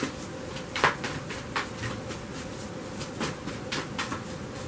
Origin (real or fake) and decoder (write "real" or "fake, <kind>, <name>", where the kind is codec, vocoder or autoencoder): real